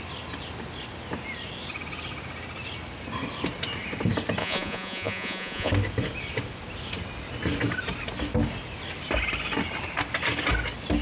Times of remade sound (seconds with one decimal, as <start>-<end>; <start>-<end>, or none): 4.4-5.7